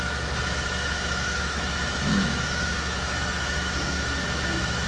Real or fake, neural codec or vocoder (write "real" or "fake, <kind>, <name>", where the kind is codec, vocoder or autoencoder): fake, autoencoder, DAC-VAE